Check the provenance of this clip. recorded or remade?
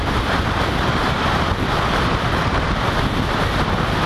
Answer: recorded